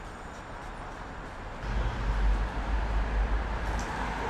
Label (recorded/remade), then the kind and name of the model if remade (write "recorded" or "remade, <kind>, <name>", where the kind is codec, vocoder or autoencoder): recorded